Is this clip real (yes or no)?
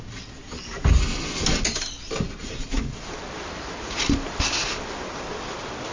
yes